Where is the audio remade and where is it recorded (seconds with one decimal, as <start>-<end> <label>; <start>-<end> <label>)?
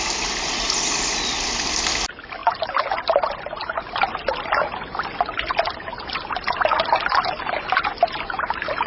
0.0-8.9 recorded